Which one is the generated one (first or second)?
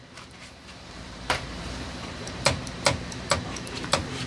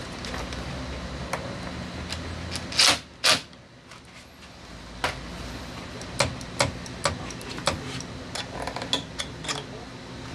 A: first